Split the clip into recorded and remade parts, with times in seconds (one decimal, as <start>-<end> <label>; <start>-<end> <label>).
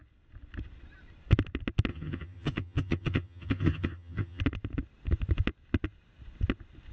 0.0-1.9 recorded; 1.9-4.4 remade; 4.4-6.9 recorded